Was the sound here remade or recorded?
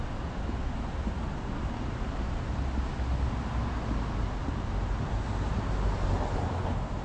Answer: recorded